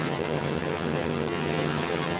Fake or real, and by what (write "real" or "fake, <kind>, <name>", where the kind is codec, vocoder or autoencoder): fake, vocoder, HiFi-GAN